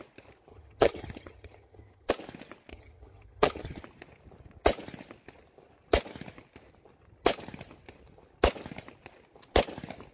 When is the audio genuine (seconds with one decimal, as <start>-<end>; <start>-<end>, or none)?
0.0-0.5; 2.1-2.7; 3.8-10.1